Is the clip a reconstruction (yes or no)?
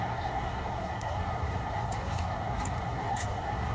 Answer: yes